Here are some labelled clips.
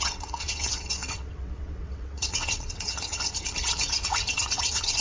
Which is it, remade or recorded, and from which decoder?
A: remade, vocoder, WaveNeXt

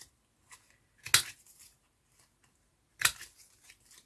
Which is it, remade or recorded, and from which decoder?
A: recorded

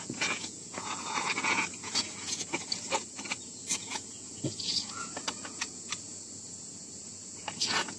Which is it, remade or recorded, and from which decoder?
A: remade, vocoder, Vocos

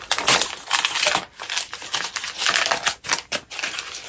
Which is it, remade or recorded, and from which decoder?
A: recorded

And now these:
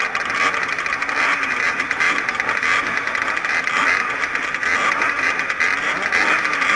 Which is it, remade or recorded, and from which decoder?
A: recorded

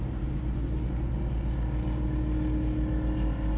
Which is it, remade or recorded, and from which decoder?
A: recorded